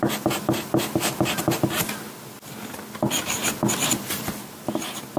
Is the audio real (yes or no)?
yes